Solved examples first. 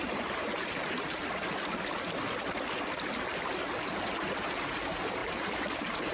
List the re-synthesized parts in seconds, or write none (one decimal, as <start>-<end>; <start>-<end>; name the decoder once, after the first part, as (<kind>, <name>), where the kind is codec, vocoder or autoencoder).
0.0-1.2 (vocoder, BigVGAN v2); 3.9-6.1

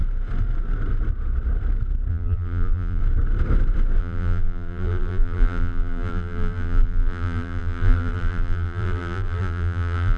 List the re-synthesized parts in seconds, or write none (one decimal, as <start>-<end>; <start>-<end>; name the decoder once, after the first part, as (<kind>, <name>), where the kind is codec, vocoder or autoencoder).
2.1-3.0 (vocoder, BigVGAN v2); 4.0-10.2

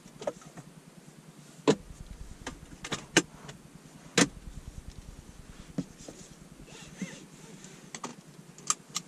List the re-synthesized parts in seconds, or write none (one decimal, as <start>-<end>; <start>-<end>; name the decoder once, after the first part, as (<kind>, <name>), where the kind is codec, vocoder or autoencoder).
none

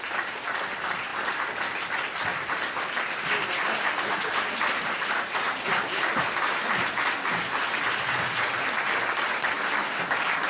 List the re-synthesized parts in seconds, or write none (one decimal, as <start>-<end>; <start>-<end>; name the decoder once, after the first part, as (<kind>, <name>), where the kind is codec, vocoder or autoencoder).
1.1-1.6 (vocoder, BigVGAN v2)

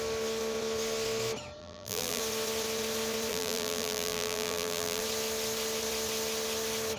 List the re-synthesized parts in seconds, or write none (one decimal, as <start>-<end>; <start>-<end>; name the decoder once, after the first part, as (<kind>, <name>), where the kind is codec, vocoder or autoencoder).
1.6-2.2 (vocoder, BigVGAN v2); 3.3-5.0

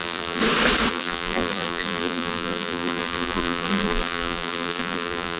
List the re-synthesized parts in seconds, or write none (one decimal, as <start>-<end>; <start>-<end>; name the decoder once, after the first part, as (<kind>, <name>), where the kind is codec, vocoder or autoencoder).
0.0-0.4 (vocoder, BigVGAN v2); 0.9-5.4

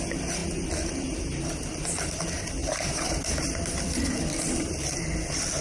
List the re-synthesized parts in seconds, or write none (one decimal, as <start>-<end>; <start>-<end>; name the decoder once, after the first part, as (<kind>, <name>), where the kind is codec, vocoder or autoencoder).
2.6-5.6 (vocoder, BigVGAN v2)

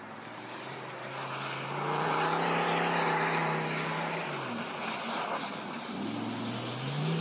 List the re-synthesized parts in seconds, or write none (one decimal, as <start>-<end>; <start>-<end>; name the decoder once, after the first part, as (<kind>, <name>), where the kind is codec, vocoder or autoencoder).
none